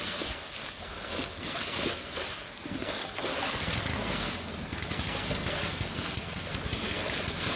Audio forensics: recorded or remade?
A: remade